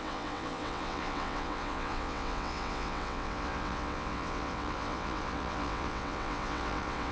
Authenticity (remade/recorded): remade